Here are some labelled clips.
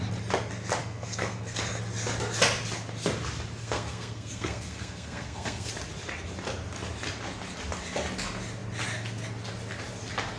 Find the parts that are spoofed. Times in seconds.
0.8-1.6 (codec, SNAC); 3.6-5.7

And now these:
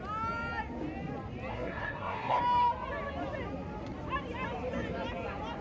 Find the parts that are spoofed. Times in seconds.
1.5-2.4 (codec, SNAC)

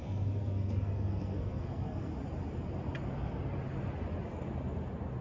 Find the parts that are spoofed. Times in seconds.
0.0-2.1 (codec, SNAC)